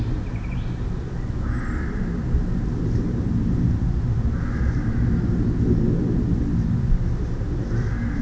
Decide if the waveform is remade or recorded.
recorded